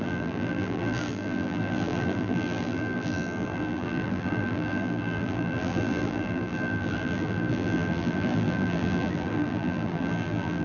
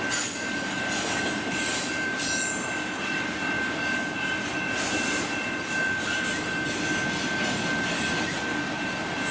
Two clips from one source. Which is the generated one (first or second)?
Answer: first